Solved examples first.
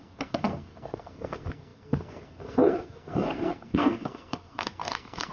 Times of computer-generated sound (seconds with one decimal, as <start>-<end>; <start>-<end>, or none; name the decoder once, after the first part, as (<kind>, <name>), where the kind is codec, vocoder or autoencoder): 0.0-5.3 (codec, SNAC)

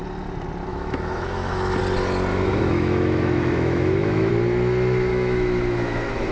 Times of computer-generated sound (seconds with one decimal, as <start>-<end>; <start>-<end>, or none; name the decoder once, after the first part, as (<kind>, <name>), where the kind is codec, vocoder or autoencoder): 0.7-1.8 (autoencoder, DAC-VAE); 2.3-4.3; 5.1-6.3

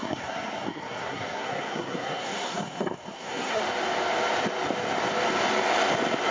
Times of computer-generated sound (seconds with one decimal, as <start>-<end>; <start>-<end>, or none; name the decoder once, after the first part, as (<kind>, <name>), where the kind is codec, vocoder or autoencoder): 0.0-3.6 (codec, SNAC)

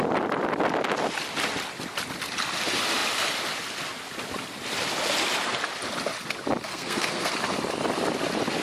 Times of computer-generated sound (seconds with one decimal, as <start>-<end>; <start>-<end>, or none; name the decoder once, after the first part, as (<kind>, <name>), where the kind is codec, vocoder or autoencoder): 6.7-7.3 (codec, SNAC)

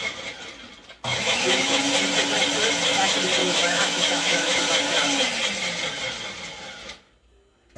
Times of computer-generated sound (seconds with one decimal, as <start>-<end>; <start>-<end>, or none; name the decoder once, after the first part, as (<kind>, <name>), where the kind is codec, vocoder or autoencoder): 1.1-1.8 (autoencoder, DAC-VAE); 3.4-4.6